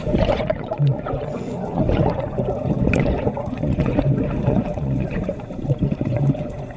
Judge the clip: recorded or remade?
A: remade